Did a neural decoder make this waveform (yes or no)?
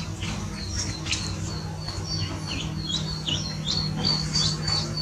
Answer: no